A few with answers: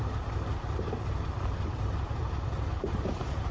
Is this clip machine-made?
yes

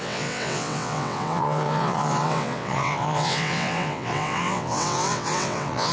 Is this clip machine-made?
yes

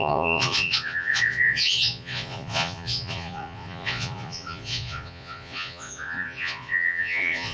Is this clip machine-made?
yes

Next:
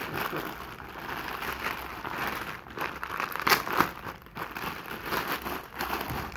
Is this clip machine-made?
no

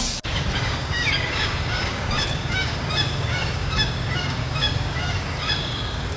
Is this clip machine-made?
yes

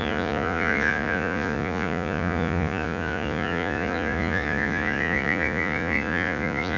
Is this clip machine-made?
yes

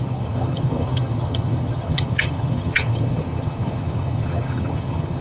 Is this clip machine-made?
yes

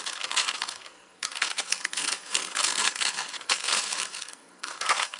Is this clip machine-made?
yes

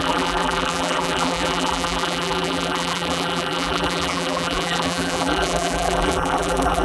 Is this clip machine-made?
yes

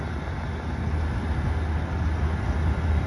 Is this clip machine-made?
no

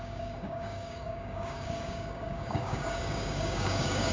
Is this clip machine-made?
yes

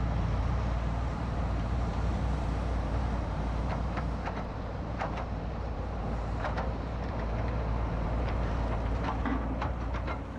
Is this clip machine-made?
yes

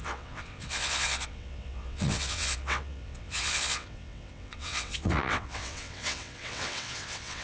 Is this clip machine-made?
yes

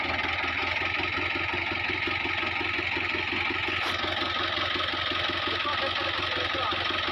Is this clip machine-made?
no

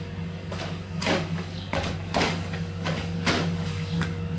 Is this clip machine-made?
yes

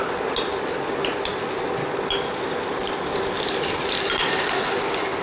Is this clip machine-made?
no